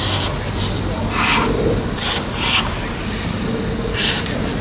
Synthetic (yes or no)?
no